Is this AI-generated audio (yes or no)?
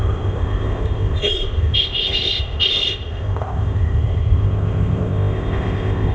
yes